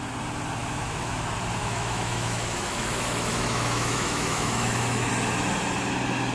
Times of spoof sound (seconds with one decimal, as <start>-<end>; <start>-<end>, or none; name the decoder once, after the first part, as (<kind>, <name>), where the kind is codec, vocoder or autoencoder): 0.6-1.2 (autoencoder, DAC-VAE); 1.6-5.1